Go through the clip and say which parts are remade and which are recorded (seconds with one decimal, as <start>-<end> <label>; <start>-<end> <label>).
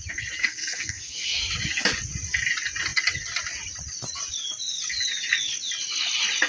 0.0-0.4 recorded; 0.4-1.4 remade; 1.4-6.5 recorded